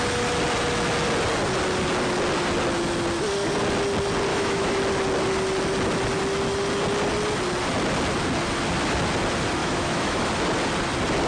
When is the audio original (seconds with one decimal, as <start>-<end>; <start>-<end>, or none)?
0.0-4.3; 4.8-9.6; 10.3-11.3